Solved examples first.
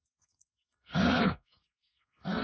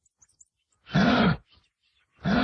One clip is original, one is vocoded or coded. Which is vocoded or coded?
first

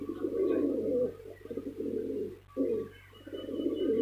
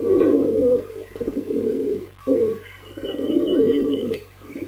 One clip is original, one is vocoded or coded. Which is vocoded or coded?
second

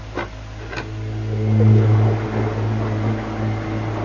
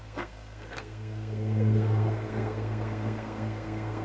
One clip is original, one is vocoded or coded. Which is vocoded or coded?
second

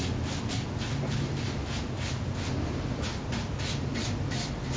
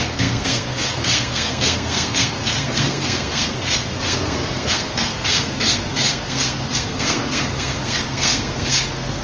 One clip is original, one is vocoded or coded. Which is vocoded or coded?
second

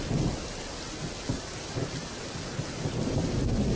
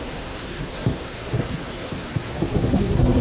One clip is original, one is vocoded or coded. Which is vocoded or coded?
second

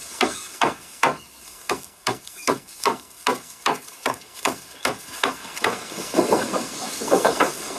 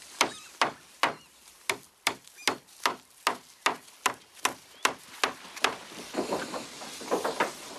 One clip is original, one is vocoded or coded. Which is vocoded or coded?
first